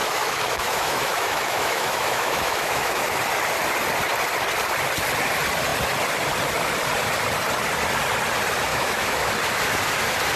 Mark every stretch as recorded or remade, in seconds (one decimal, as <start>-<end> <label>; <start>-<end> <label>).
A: 0.0-3.2 remade; 3.2-8.7 recorded; 8.7-9.3 remade; 9.3-10.4 recorded

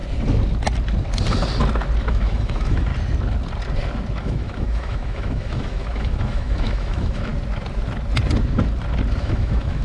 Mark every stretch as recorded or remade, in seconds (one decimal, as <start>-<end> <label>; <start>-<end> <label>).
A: 0.0-2.1 recorded; 2.1-2.9 remade; 2.9-4.2 recorded; 4.2-7.3 remade; 7.3-9.2 recorded; 9.2-9.8 remade

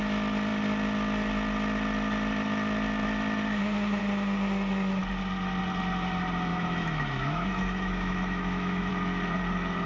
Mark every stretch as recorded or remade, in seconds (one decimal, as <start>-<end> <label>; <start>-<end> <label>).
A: 0.0-6.5 recorded; 6.5-8.9 remade; 8.9-9.9 recorded

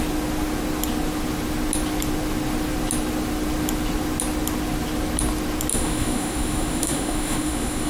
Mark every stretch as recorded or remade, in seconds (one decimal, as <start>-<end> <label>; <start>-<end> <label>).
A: 0.0-5.7 recorded; 5.7-7.9 remade

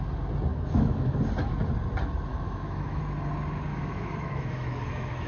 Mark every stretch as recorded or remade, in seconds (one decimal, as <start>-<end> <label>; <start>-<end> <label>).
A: 0.0-0.5 recorded; 0.5-1.2 remade; 1.2-2.3 recorded; 2.3-3.0 remade; 3.0-3.7 recorded; 3.7-5.3 remade